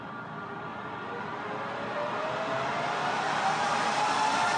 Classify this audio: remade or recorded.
recorded